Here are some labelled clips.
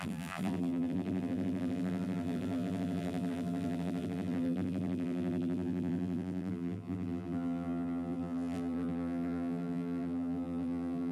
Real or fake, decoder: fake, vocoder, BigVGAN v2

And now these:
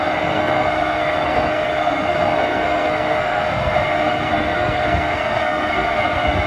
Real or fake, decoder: fake, codec, SNAC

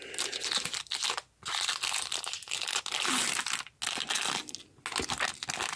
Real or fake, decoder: real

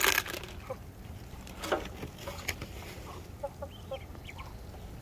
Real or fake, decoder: real